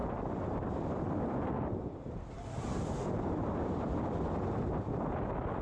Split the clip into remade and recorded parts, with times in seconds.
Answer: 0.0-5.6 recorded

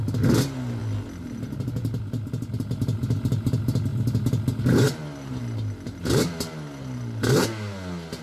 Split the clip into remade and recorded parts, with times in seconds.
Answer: 0.0-8.2 recorded

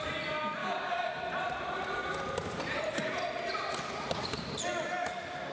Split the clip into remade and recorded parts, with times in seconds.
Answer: 0.0-0.6 recorded; 0.6-1.2 remade; 1.2-5.5 recorded

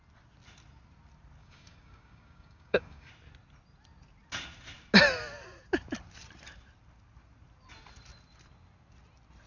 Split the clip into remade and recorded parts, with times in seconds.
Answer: 0.0-1.4 recorded; 1.4-3.1 remade; 3.1-9.5 recorded

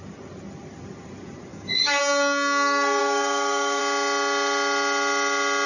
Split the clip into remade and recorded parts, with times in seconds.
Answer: 0.0-1.5 recorded; 1.5-2.0 remade; 2.0-3.0 recorded; 3.0-3.8 remade; 3.8-5.7 recorded

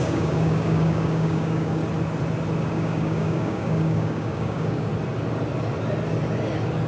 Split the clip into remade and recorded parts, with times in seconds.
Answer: 0.0-1.8 remade; 1.8-2.7 recorded; 2.7-4.9 remade; 4.9-6.9 recorded